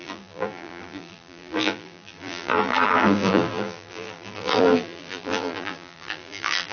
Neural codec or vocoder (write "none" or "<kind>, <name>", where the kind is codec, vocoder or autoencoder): vocoder, BigVGAN v2